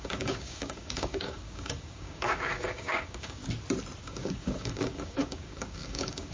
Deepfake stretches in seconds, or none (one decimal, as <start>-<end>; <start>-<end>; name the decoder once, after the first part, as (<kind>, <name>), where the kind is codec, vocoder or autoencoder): 0.0-3.4 (codec, DAC); 4.0-6.3